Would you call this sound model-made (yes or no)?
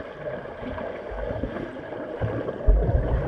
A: yes